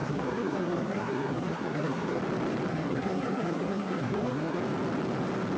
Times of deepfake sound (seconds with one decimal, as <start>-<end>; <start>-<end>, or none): 0.0-2.2; 2.7-4.6